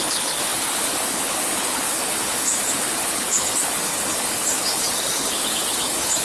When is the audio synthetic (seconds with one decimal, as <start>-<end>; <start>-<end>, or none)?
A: 0.0-6.2